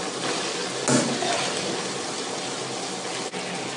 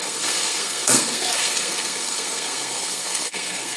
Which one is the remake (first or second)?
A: second